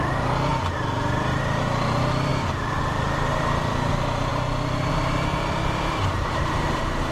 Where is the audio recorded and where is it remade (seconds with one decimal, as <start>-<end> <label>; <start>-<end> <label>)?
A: 0.0-0.5 remade; 0.5-1.6 recorded; 1.6-4.3 remade; 4.3-4.9 recorded; 4.9-7.1 remade